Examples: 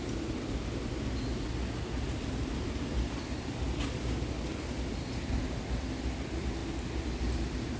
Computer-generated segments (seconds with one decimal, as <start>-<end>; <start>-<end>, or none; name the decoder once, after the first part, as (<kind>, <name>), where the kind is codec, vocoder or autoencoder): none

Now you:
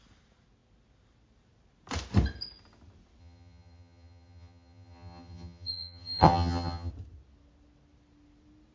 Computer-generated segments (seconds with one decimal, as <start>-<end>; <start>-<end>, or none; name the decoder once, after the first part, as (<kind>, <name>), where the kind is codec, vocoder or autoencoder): 3.2-6.9 (vocoder, HiFi-GAN)

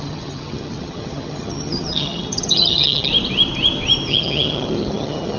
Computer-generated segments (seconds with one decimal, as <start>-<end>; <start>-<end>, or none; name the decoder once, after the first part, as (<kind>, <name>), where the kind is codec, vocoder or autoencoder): 0.0-3.1 (vocoder, HiFi-GAN); 4.1-5.4

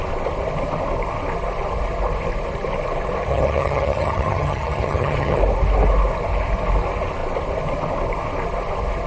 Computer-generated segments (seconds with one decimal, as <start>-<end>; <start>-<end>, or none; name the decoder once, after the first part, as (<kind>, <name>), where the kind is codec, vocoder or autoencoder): 3.3-5.4 (vocoder, HiFi-GAN)

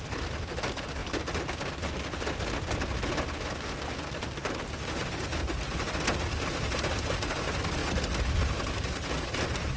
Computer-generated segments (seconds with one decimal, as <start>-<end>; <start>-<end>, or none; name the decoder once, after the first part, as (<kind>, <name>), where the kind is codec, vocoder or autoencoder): none

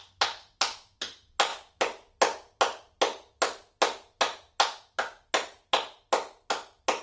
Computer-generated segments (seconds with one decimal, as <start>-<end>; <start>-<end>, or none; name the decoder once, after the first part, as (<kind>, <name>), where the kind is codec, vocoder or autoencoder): none

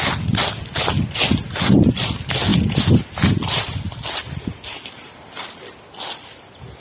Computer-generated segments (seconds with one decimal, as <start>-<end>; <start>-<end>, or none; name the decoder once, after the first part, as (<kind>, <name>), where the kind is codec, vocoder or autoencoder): none